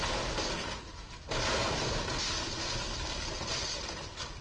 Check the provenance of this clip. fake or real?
real